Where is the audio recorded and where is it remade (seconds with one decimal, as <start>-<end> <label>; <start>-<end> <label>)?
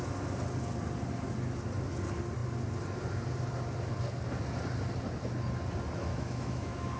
0.0-6.1 recorded; 6.1-7.0 remade